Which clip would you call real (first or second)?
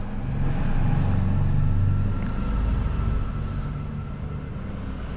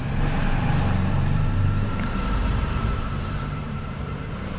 first